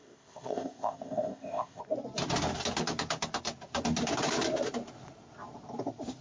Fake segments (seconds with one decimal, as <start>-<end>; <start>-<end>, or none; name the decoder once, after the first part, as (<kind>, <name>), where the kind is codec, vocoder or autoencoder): 0.0-1.8 (codec, ZipCodec)